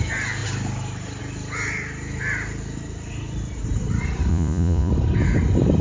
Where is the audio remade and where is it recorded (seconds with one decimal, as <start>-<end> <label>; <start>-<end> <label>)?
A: 0.0-4.3 recorded; 4.3-4.9 remade; 4.9-5.8 recorded